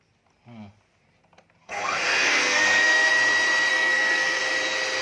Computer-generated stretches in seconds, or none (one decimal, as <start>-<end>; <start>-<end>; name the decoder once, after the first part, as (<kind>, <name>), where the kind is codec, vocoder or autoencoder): 1.6-3.1 (codec, SNAC); 3.7-4.4